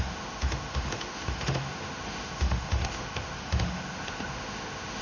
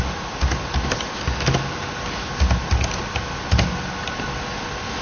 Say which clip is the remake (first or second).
first